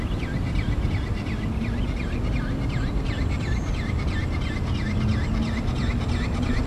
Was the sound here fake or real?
real